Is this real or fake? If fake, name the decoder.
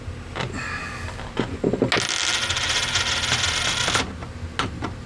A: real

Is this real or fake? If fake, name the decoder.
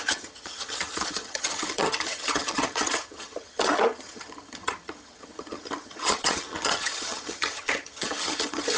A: fake, vocoder, HiFi-GAN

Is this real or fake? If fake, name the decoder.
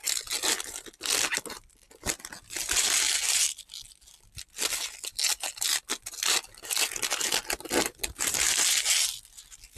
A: real